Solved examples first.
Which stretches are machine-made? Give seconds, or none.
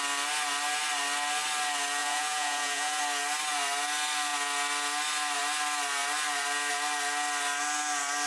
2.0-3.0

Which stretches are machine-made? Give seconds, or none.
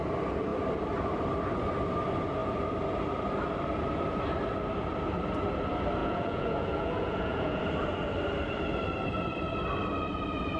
6.0-7.6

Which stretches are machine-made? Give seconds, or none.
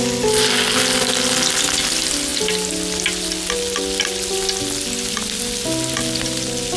none